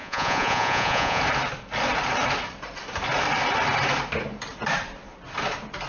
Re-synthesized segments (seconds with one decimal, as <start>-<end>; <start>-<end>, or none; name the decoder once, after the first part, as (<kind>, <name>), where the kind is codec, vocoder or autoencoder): 0.0-1.2 (vocoder, Vocos)